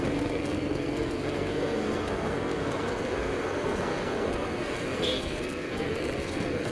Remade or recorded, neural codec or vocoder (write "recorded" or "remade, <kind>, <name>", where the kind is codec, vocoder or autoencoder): remade, codec, SNAC